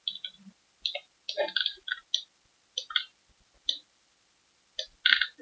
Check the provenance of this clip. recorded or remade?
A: recorded